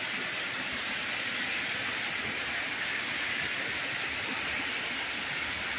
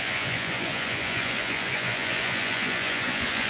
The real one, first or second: first